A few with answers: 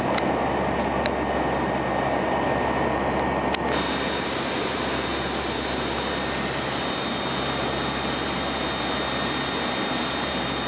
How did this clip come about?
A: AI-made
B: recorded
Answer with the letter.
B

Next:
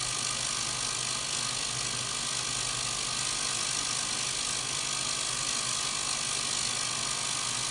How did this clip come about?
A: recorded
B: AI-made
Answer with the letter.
A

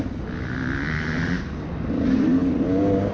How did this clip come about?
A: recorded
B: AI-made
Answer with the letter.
A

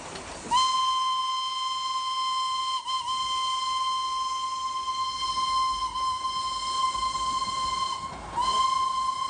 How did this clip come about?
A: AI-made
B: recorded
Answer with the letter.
B